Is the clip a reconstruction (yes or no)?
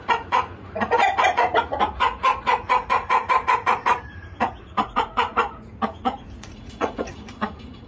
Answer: yes